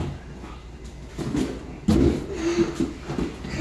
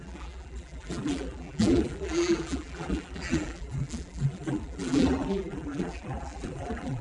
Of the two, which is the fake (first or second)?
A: second